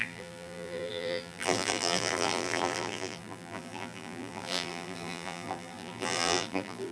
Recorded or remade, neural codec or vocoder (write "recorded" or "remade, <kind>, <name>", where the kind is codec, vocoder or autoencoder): remade, vocoder, BigVGAN v2